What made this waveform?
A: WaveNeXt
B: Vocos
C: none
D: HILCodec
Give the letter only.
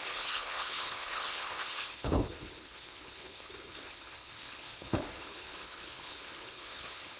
D